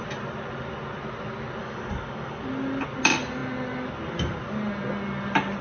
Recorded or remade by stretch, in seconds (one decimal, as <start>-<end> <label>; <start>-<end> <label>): 0.0-1.6 recorded; 1.6-2.4 remade; 2.4-5.6 recorded